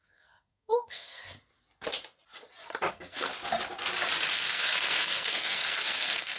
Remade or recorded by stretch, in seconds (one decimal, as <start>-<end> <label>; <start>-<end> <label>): 0.0-1.5 remade; 1.5-2.9 recorded; 2.9-3.3 remade; 3.3-4.3 recorded; 4.3-6.4 remade